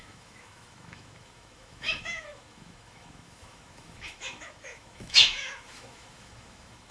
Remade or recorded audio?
remade